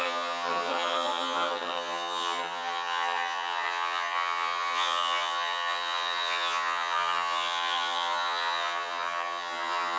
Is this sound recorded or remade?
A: remade